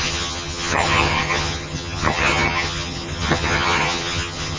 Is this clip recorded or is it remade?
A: remade